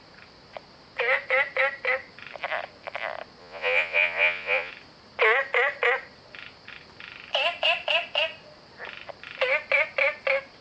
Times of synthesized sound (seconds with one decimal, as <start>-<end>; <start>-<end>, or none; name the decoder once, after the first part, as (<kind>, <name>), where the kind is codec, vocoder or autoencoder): 3.4-4.7 (vocoder, Vocos)